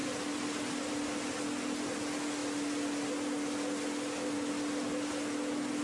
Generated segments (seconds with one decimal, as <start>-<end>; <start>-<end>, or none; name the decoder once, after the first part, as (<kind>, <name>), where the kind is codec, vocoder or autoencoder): none